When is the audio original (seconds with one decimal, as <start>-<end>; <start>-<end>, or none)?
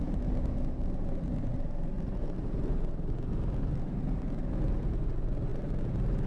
0.0-6.3